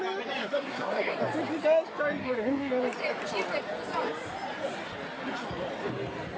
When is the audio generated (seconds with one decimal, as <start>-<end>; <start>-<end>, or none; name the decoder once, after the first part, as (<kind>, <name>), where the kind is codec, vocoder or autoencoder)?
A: 0.4-1.1 (codec, SNAC); 2.2-2.7